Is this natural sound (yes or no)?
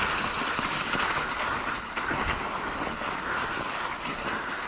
yes